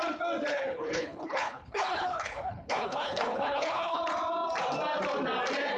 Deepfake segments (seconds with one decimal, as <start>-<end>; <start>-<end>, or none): 0.5-4.0